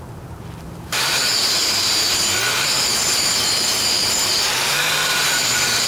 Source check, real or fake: fake